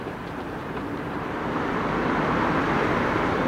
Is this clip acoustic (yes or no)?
no